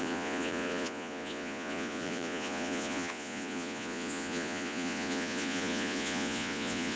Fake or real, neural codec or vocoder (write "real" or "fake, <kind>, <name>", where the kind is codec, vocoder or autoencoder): fake, vocoder, Vocos